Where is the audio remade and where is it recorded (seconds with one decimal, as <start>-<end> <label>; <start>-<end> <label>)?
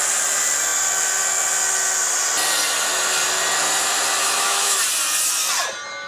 0.0-4.2 recorded; 4.2-4.8 remade; 4.8-6.1 recorded